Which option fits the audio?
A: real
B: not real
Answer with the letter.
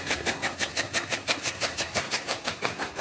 B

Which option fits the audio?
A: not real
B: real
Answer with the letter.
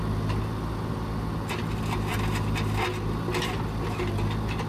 B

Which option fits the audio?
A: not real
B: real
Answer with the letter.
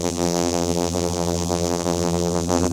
A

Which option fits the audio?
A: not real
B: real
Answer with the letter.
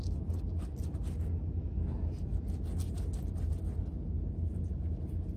B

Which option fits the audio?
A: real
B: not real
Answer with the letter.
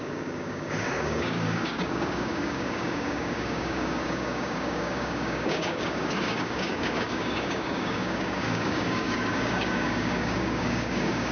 B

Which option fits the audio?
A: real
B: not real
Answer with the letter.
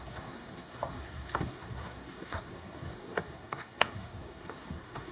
B